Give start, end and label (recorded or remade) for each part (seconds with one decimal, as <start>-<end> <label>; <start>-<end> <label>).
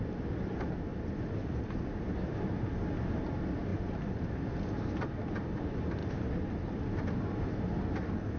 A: 0.0-0.9 recorded; 0.9-2.9 remade; 2.9-8.4 recorded